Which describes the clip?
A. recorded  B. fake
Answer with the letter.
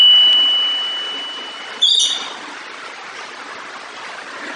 A